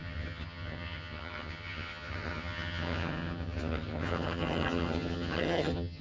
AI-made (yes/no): yes